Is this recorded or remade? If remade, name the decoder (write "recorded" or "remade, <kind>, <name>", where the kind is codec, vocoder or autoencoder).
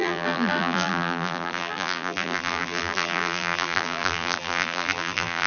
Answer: remade, vocoder, BigVGAN v2